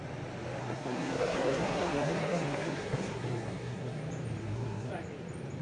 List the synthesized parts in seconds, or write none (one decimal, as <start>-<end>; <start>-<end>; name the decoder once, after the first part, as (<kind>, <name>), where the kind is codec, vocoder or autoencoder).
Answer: 0.6-4.0 (codec, SNAC); 4.4-4.9